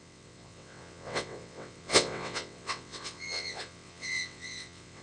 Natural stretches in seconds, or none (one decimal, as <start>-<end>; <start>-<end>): none